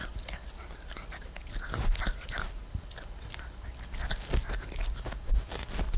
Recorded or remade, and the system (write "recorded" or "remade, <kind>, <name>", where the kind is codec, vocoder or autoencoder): recorded